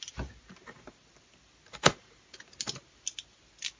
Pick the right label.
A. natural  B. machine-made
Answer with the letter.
A